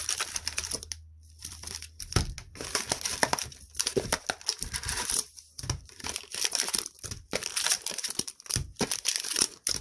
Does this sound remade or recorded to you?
remade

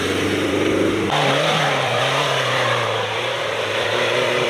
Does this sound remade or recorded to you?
remade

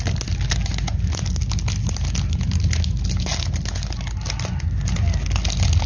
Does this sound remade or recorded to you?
recorded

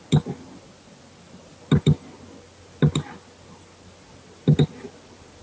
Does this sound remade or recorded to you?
recorded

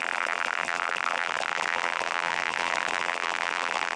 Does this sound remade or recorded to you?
remade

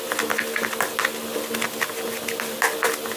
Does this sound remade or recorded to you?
recorded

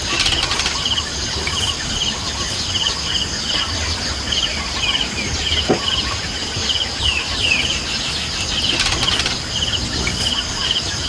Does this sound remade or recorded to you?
recorded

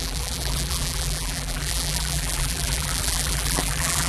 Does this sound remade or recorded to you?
remade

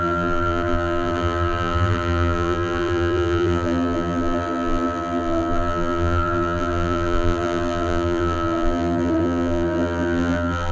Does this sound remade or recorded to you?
remade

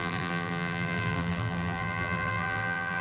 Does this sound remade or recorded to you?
remade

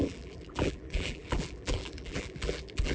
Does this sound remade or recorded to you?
remade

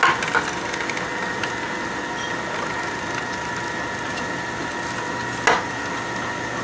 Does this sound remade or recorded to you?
recorded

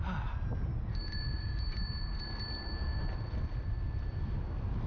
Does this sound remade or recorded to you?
recorded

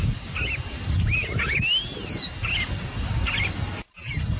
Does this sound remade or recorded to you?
recorded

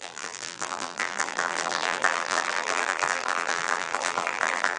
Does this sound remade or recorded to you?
remade